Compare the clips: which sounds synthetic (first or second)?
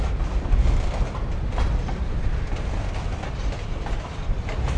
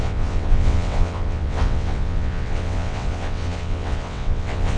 second